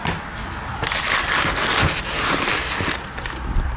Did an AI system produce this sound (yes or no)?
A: no